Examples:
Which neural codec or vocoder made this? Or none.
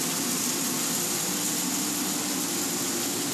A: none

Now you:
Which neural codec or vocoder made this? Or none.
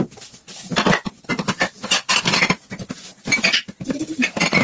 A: none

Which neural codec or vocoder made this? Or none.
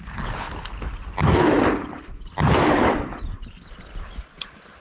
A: none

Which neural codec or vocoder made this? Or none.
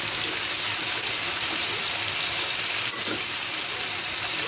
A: none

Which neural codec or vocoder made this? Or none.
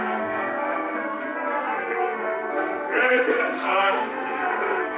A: codec, SNAC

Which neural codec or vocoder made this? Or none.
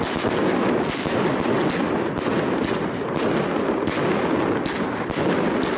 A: none